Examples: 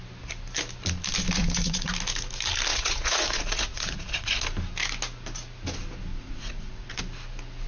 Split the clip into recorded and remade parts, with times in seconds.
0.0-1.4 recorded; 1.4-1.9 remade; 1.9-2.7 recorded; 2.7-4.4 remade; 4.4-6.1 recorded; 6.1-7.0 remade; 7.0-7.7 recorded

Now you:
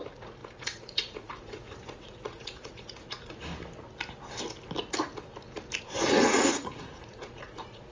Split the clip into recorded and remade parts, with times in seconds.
0.0-3.5 remade; 3.5-5.8 recorded; 5.8-7.9 remade

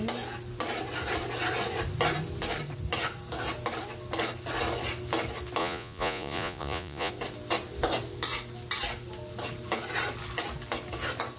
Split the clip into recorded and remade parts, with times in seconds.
0.0-5.6 recorded; 5.6-7.1 remade; 7.1-11.4 recorded

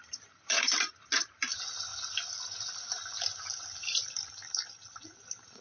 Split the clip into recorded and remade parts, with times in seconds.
0.0-5.6 recorded

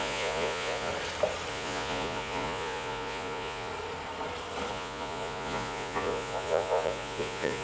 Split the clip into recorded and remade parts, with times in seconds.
0.0-0.9 remade; 0.9-1.5 recorded; 1.5-3.7 remade; 3.7-4.7 recorded; 4.7-7.6 remade

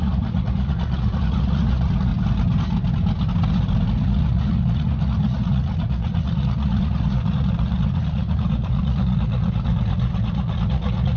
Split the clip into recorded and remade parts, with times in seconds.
0.0-2.1 remade; 2.1-4.0 recorded; 4.0-11.2 remade

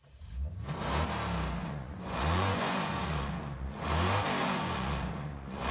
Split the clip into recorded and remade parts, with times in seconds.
0.0-1.6 recorded; 1.6-3.9 remade; 3.9-4.4 recorded; 4.4-5.7 remade